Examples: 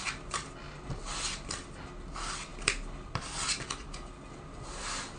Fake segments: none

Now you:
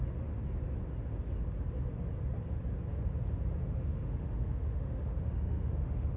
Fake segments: 3.6-6.2 (autoencoder, DAC-VAE)

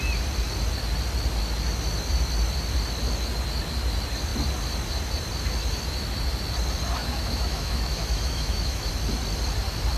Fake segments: 7.0-8.9 (autoencoder, DAC-VAE)

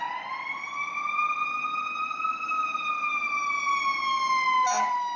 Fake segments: none

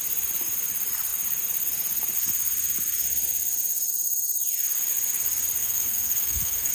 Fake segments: 5.6-6.7 (codec, SNAC)